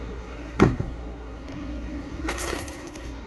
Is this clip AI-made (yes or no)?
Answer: yes